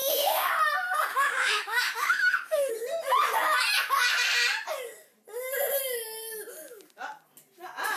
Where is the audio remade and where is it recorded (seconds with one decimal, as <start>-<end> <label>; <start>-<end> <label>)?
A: 0.0-0.5 remade; 0.5-1.1 recorded; 1.1-2.7 remade; 2.7-8.0 recorded